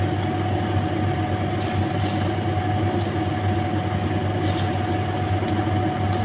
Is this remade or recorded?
recorded